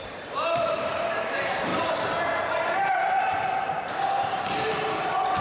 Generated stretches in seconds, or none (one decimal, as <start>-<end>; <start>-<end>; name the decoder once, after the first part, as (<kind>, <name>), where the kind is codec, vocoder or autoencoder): 0.0-1.7 (vocoder, BigVGAN v2); 2.5-5.4